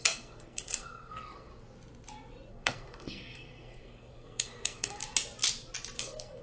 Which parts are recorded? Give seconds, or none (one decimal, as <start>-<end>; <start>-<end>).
1.5-2.5; 5.0-6.0